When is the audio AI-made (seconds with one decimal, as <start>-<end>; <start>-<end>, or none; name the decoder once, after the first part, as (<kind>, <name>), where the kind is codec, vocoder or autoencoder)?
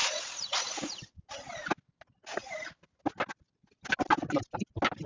none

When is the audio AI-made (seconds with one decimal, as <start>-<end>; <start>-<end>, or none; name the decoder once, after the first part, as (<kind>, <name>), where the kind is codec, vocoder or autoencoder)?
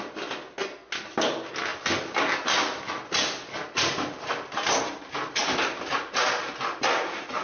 5.4-6.5 (vocoder, BigVGAN v2)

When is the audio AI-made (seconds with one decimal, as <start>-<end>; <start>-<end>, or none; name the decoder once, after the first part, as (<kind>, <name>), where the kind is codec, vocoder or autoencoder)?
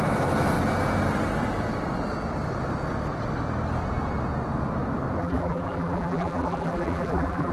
5.2-7.5 (vocoder, BigVGAN v2)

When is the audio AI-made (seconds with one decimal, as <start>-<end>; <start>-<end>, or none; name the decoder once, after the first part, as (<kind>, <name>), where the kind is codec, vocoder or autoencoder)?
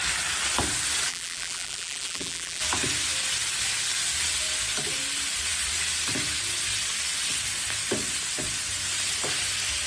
1.1-2.6 (vocoder, BigVGAN v2)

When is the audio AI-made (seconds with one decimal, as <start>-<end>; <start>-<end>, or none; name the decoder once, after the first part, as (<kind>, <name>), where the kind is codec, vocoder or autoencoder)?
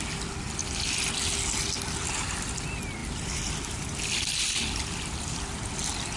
3.0-5.3 (vocoder, BigVGAN v2)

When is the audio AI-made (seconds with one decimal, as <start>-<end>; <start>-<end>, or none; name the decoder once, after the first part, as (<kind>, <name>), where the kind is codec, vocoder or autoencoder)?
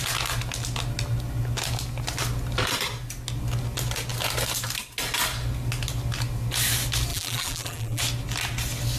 7.1-8.0 (vocoder, BigVGAN v2)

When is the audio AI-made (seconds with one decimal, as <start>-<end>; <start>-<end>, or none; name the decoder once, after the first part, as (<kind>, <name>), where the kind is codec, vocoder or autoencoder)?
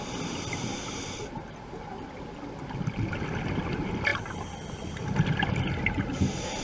0.7-2.2 (vocoder, BigVGAN v2); 4.1-6.0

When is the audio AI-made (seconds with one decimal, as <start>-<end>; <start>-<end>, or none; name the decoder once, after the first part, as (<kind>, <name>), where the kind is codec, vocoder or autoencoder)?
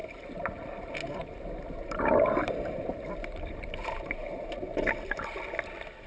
0.0-0.5 (vocoder, BigVGAN v2); 1.2-4.9